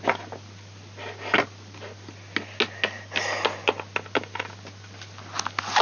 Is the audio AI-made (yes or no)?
no